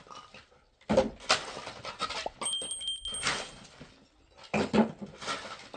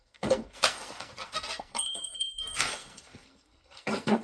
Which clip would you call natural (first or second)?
first